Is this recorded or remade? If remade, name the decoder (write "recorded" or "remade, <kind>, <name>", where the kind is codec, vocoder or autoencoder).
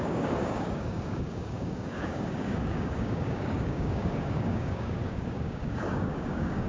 remade, codec, DAC